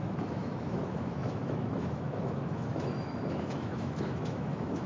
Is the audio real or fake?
fake